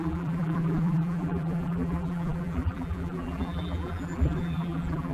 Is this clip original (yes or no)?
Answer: no